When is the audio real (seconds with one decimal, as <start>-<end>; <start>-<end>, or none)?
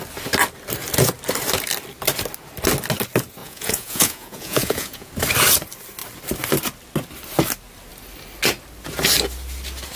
0.0-3.4; 5.1-10.0